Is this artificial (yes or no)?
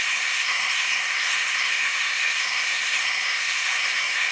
yes